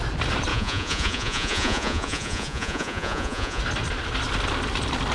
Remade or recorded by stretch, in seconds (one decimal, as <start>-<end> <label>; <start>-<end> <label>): 0.0-0.5 recorded; 0.5-3.6 remade; 3.6-5.1 recorded